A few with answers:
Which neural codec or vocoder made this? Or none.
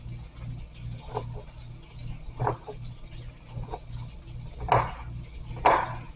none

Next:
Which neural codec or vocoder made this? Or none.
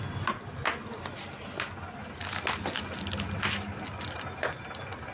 none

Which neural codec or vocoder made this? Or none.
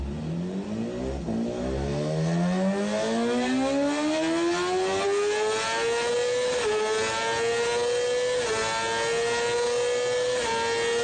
none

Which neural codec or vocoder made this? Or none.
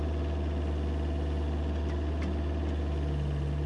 none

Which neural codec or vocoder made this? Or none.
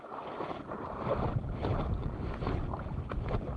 none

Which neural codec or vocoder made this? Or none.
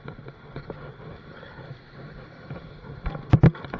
none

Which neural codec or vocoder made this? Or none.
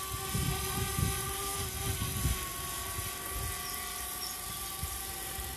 vocoder, BigVGAN v2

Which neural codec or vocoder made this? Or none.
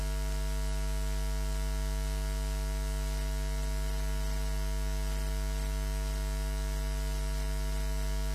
none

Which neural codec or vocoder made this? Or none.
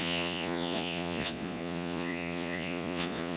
vocoder, Vocos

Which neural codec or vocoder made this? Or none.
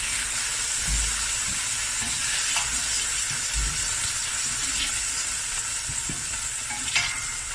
none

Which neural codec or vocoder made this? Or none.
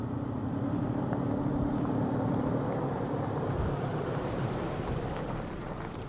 vocoder, BigVGAN v2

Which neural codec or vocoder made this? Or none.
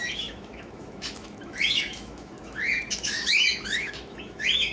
autoencoder, DAC-VAE